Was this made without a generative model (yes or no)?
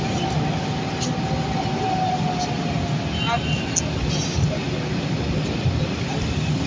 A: yes